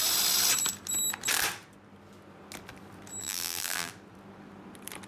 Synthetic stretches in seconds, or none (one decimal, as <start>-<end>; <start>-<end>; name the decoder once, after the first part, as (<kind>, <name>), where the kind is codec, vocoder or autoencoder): 3.2-3.9 (vocoder, BigVGAN v2)